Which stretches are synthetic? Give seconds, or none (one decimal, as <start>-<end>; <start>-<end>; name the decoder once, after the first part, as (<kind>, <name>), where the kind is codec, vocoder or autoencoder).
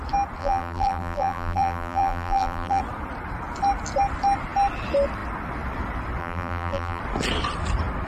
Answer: 0.4-2.8 (vocoder, BigVGAN v2); 6.2-7.0